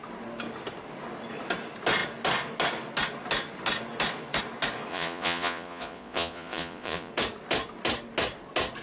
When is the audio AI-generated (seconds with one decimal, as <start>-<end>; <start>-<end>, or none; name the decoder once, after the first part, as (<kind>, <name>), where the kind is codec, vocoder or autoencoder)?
4.9-7.1 (vocoder, Vocos)